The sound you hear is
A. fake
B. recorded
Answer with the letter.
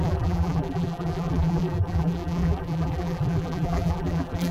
A